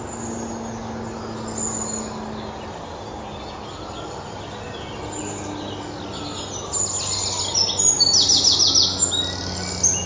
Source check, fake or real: real